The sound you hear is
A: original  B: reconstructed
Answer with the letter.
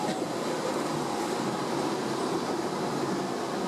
A